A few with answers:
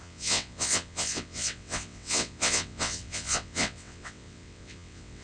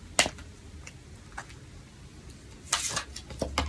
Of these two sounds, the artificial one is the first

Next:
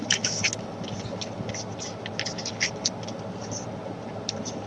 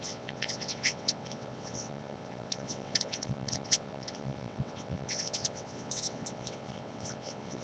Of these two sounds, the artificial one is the second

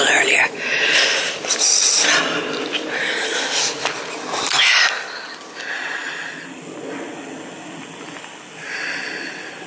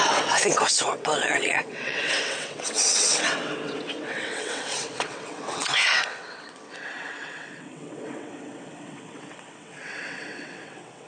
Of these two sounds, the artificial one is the second